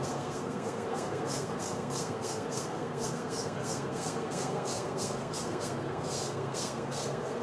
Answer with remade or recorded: remade